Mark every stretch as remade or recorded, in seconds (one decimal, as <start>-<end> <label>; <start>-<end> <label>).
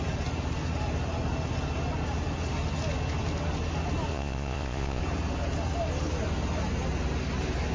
0.0-4.1 recorded; 4.1-5.0 remade; 5.0-7.7 recorded